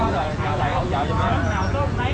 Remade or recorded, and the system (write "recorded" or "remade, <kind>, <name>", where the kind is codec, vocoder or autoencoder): remade, vocoder, Vocos